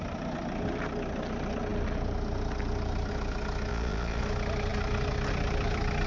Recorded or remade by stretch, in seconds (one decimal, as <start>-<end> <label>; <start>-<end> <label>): 0.0-3.7 recorded; 3.7-4.2 remade; 4.2-6.1 recorded